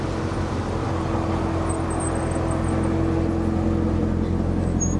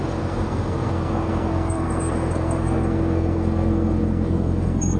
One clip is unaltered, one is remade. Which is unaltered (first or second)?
first